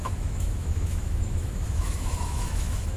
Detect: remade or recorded remade